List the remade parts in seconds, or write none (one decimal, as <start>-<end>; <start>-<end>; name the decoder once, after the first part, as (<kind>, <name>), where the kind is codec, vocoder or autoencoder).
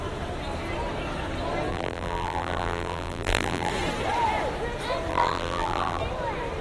1.7-3.7 (vocoder, BigVGAN v2); 5.1-6.0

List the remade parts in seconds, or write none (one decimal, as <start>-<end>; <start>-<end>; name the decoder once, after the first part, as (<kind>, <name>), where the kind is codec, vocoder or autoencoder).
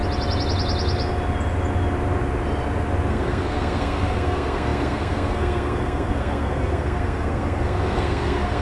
3.1-8.6 (codec, SNAC)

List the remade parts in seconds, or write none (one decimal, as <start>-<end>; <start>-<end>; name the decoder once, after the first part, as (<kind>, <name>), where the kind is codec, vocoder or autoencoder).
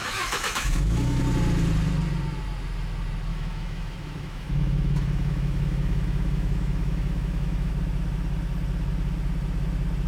0.0-1.2 (autoencoder, DAC-VAE); 3.3-7.7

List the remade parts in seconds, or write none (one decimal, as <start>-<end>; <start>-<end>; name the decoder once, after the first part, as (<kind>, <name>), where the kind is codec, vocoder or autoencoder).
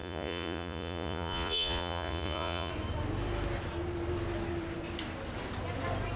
0.0-2.7 (vocoder, Vocos)